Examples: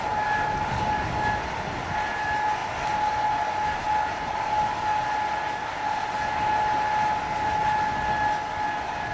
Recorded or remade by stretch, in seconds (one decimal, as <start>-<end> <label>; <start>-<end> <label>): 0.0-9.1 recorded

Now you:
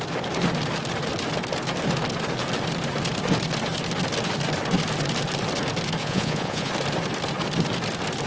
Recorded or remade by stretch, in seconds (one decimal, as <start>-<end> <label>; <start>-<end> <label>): 0.0-6.0 recorded; 6.0-6.7 remade; 6.7-8.3 recorded

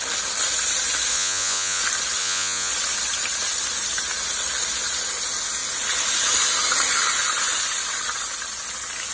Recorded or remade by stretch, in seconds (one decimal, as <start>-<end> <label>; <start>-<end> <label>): 0.0-1.1 recorded; 1.1-1.8 remade; 1.8-2.2 recorded; 2.2-2.7 remade; 2.7-9.1 recorded

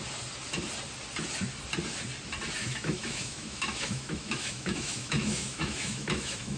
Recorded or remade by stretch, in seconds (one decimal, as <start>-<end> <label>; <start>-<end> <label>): 0.0-2.6 recorded; 2.6-6.6 remade